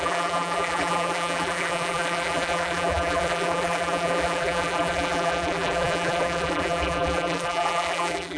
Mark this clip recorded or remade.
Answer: remade